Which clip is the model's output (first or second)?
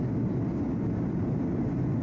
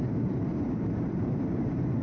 second